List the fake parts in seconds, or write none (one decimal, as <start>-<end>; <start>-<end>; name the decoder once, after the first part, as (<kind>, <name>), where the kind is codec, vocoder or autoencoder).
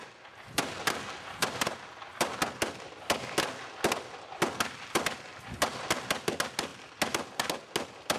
none